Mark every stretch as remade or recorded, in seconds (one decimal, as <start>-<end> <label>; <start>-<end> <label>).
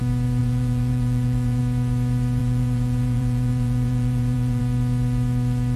0.0-0.4 recorded; 0.4-1.6 remade; 1.6-2.4 recorded; 2.4-4.6 remade; 4.6-5.8 recorded